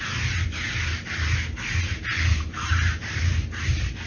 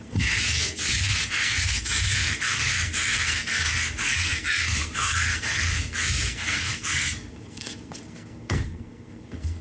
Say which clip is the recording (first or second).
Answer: first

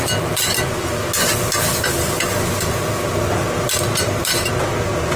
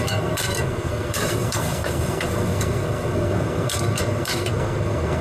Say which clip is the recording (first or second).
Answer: first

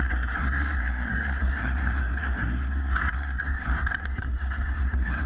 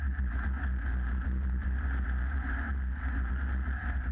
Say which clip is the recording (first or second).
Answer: second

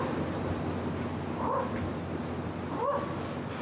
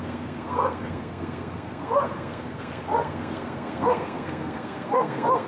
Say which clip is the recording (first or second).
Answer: first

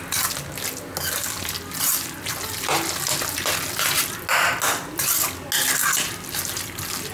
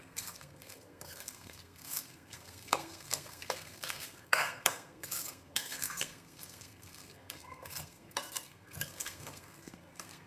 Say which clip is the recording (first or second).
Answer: first